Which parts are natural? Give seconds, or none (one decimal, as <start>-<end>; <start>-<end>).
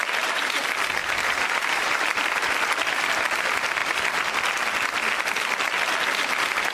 0.6-1.0; 2.3-6.7